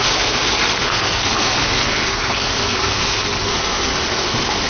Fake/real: fake